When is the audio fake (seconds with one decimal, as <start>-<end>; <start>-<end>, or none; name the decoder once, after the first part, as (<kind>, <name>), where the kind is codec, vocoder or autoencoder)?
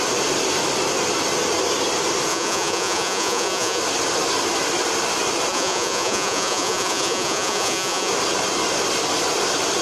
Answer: 2.3-3.8 (vocoder, Vocos); 5.5-8.1